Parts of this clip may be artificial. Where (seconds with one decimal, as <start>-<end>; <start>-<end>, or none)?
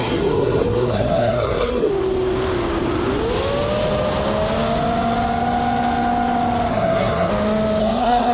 0.0-1.9; 6.7-7.3; 7.8-8.3